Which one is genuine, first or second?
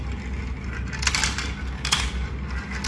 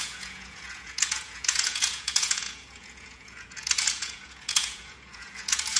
first